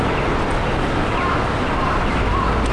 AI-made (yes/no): no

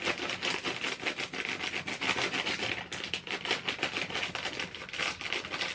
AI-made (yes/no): no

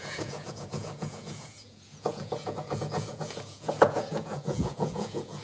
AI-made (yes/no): yes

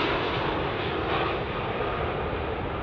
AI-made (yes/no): no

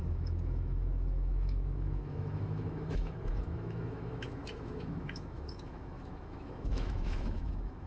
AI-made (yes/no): yes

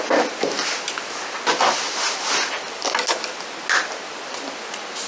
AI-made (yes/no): no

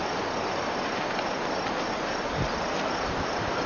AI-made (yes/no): no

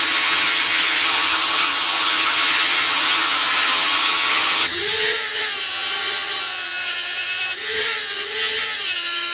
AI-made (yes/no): yes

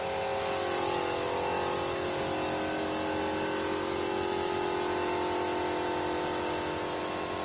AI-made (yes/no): no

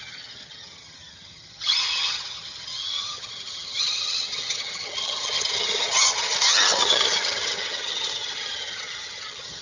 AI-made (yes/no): yes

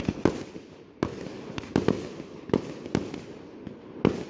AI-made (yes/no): no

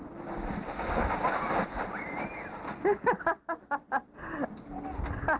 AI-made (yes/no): no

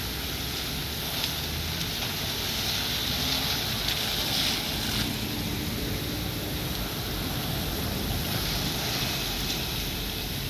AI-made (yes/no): no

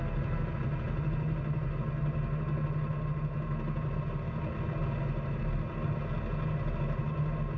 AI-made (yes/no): no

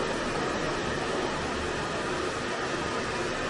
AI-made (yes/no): no